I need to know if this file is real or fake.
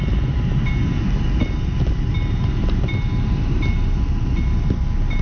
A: real